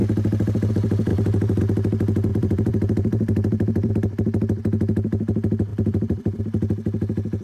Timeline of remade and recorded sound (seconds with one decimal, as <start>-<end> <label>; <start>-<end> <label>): 0.0-1.1 recorded; 1.1-1.6 remade; 1.6-2.3 recorded; 2.3-3.9 remade; 3.9-5.7 recorded; 5.7-6.4 remade; 6.4-7.4 recorded